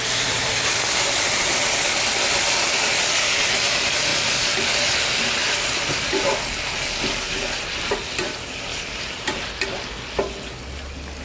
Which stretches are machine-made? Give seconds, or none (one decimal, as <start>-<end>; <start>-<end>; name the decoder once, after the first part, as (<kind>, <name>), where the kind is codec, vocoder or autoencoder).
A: 8.7-9.6 (vocoder, BigVGAN v2)